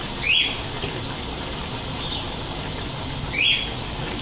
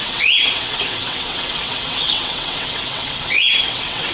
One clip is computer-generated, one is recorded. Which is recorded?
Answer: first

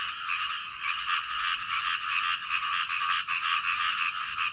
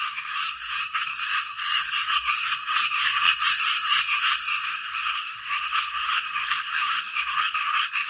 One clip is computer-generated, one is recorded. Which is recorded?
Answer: first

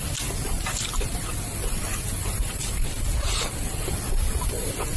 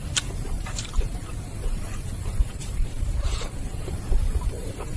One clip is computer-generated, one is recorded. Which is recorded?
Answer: first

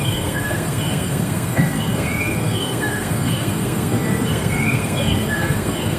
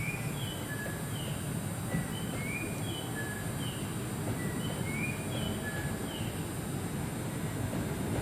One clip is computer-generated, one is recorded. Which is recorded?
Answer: second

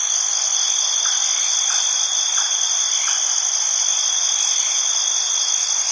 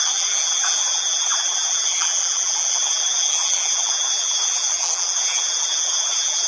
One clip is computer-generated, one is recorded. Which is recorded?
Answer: first